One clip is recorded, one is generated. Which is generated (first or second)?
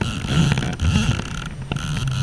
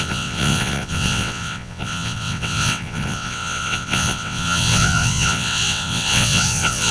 second